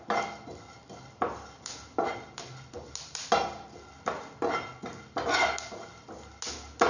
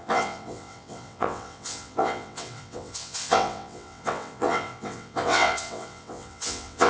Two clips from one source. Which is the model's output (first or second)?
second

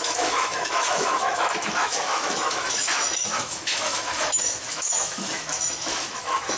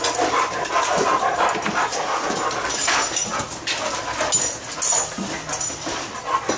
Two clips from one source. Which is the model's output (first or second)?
first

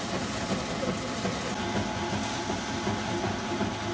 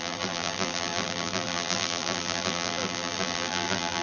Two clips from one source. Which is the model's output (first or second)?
second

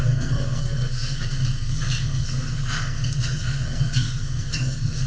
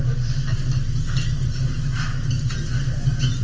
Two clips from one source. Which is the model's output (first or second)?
first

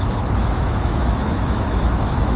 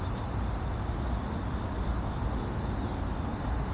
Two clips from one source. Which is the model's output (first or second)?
first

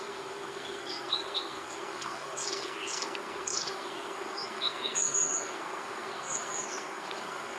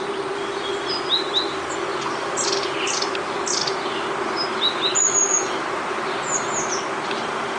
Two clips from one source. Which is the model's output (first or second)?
first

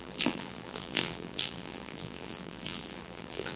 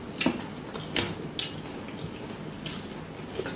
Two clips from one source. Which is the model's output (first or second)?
first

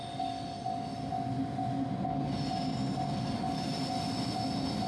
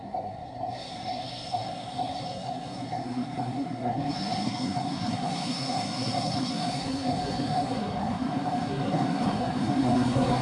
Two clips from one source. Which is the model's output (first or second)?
second